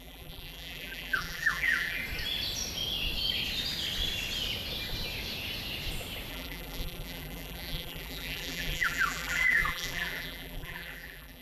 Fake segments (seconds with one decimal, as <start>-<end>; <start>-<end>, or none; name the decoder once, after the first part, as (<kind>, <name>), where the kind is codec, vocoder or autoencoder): 0.0-2.0 (vocoder, BigVGAN v2); 6.3-11.4